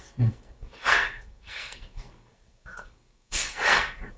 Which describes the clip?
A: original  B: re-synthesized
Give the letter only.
B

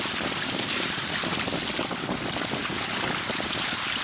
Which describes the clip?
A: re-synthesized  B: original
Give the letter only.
B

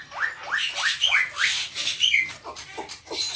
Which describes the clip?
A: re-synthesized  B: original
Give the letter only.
B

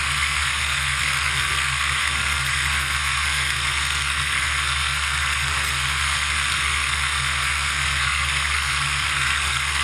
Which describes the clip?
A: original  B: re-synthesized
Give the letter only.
B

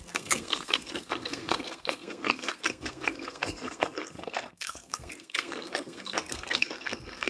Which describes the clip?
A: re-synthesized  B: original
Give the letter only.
A